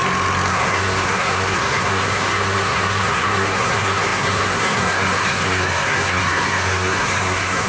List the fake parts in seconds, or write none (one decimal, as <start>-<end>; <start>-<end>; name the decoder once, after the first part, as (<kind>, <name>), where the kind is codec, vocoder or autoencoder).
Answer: 0.5-7.7 (codec, SNAC)